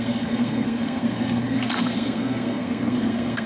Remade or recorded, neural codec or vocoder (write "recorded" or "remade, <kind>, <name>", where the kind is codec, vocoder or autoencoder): remade, codec, SNAC